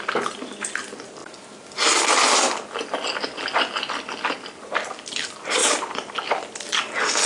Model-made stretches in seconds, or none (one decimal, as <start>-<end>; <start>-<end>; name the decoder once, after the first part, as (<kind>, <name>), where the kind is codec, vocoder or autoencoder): 5.6-6.8 (vocoder, BigVGAN v2)